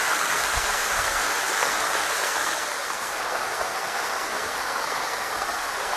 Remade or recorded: remade